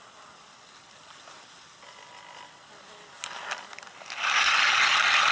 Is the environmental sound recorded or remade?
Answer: recorded